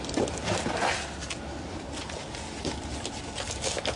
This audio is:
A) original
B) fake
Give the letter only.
A